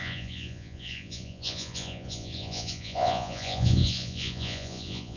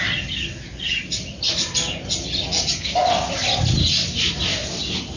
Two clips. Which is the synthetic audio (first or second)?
first